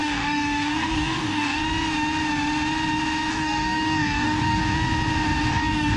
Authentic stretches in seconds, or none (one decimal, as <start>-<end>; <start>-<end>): 1.6-3.3; 4.6-5.5